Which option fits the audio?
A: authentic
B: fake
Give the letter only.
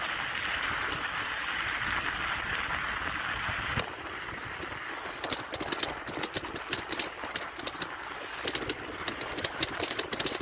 A